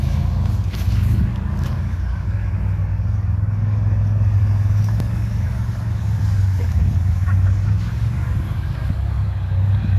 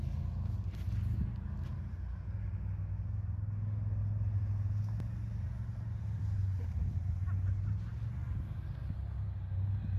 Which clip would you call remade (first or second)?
first